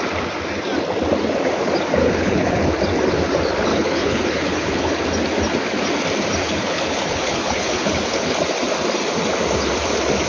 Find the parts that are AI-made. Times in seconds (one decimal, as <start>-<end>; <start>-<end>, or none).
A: 2.0-2.7; 3.7-4.9; 6.4-8.4